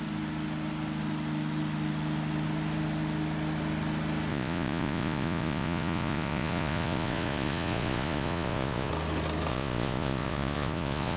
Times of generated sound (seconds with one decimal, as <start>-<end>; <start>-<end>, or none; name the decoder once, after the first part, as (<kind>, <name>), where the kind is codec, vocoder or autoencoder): 4.3-8.9 (vocoder, Vocos); 9.5-11.2